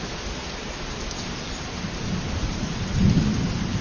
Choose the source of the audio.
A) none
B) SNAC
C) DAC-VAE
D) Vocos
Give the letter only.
A